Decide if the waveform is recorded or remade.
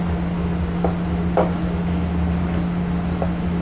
recorded